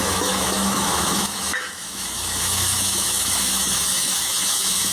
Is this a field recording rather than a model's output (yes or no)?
no